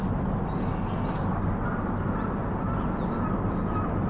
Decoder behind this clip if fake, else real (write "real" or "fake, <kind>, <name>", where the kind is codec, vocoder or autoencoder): real